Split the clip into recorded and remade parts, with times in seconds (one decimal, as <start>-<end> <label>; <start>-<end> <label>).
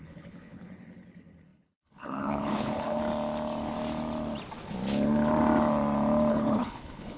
0.0-3.0 remade; 3.0-6.3 recorded; 6.3-7.2 remade